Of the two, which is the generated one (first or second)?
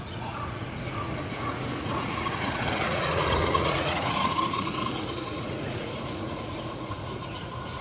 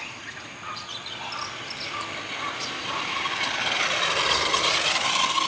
first